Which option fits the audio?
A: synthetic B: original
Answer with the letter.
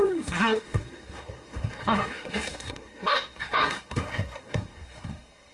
A